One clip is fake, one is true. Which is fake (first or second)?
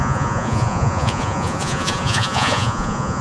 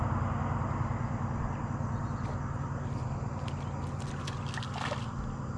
first